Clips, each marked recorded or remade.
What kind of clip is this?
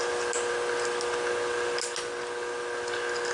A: recorded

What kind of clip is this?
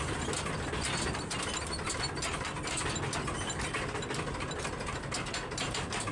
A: recorded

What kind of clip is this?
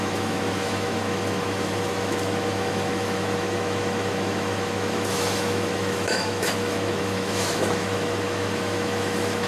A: remade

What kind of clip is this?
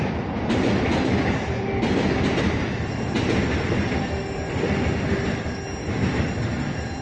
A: recorded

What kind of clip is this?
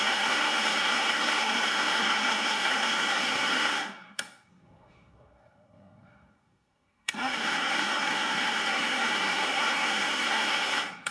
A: remade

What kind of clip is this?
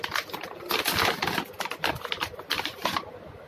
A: recorded